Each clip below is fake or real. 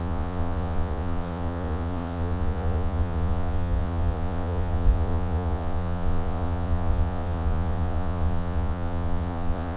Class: fake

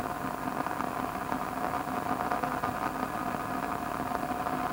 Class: real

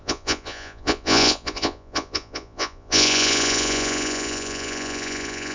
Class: fake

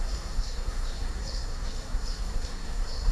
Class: fake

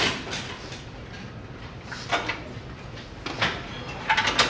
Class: real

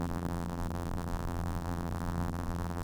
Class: fake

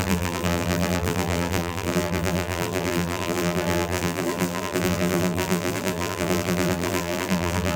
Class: fake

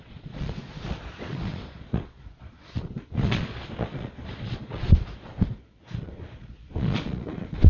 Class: fake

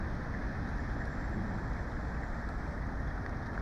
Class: real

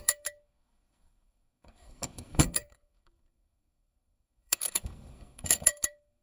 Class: fake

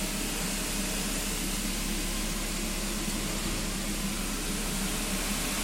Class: real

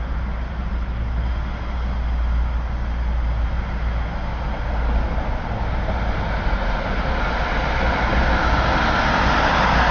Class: real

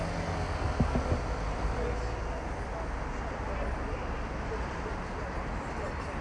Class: real